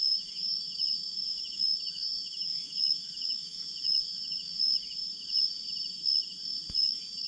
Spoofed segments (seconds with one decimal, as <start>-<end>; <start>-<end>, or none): 0.0-4.7; 6.7-7.3